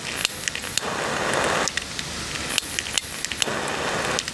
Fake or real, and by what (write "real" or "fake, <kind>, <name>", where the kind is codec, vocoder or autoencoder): real